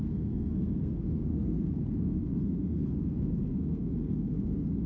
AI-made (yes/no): yes